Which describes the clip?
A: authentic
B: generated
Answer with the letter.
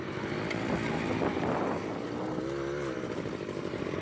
A